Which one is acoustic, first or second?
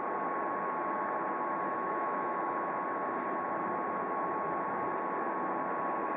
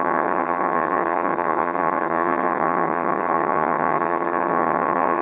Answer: first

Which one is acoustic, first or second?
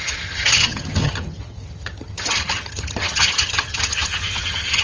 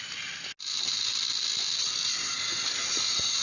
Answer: second